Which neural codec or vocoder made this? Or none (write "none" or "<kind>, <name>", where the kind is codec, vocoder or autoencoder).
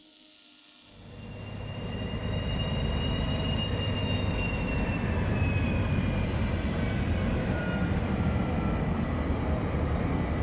none